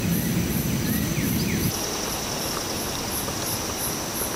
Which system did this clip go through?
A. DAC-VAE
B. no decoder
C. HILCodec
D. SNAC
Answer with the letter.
B